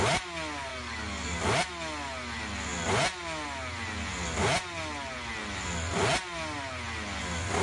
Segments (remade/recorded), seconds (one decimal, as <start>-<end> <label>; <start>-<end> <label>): 0.0-0.7 recorded; 0.7-1.4 remade; 1.4-7.6 recorded